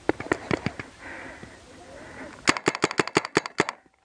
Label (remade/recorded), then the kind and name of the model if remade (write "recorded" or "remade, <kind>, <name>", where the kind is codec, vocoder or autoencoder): recorded